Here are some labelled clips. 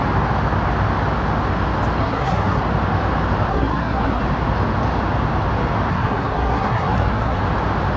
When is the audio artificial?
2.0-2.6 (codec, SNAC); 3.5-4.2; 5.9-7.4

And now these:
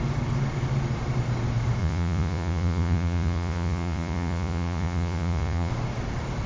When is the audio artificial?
1.8-5.7 (vocoder, Vocos)

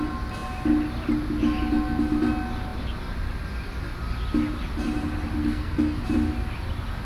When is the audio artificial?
5.4-6.0 (codec, SNAC)

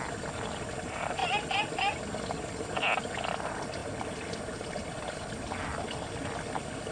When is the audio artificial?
none

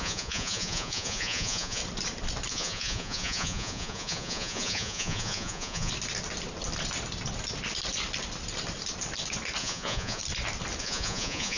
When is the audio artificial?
0.0-1.8 (vocoder, Vocos); 2.5-5.9; 9.6-10.2; 10.8-11.6

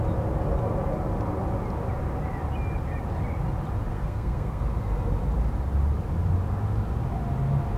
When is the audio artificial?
3.9-4.6 (codec, SNAC)

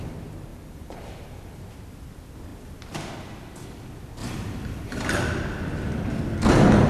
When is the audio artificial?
0.5-1.6 (vocoder, BigVGAN v2); 4.2-5.1